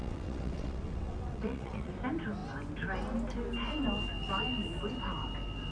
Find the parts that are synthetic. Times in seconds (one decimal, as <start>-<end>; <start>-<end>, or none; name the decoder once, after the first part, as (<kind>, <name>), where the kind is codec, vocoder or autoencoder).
0.0-1.9 (vocoder, WaveNeXt)